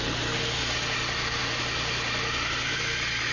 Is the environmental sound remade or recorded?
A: recorded